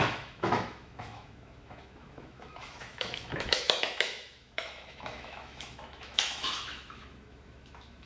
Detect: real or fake fake